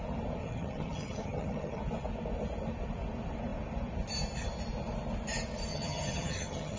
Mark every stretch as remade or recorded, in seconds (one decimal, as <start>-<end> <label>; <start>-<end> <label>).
0.0-0.4 recorded; 0.4-1.8 remade; 1.8-5.7 recorded; 5.7-6.8 remade